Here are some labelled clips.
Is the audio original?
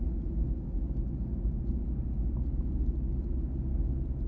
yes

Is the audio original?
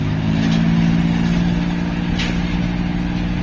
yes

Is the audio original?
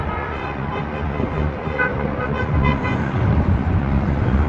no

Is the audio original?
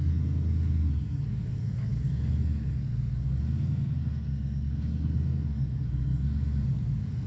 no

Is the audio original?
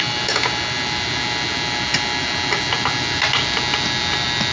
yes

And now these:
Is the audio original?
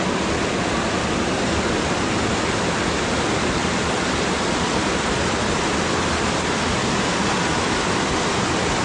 yes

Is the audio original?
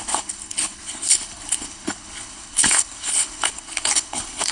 no